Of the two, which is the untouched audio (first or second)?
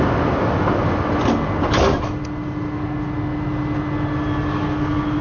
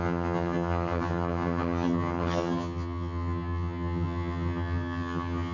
first